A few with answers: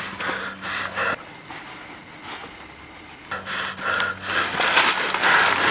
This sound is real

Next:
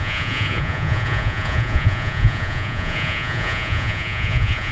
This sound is fake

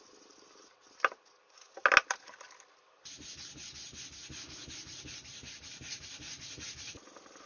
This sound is real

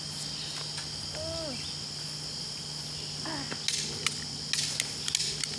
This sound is real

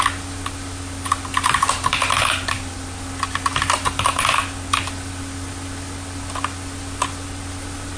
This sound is real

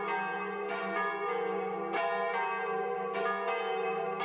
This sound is real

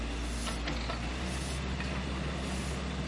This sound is real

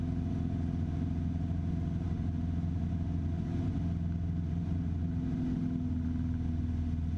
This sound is real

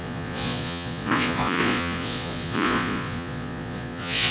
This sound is fake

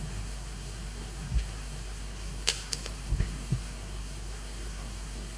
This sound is fake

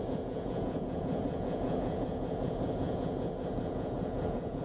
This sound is fake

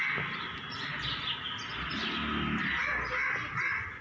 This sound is real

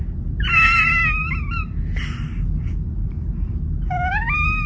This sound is real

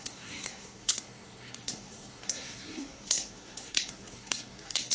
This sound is fake